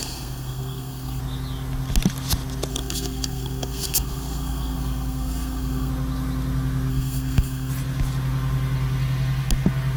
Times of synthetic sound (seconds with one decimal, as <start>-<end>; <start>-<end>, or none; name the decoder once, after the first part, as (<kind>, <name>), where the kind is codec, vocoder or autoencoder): 0.0-1.2 (codec, SNAC); 2.7-5.9; 6.9-7.7